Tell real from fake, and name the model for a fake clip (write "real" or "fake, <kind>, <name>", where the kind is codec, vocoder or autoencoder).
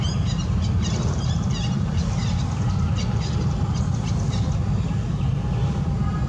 real